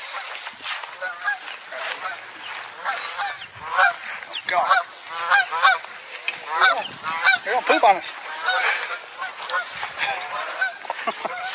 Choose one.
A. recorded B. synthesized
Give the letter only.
A